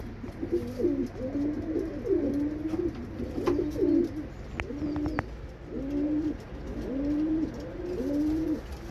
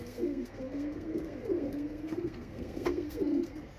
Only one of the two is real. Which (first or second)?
first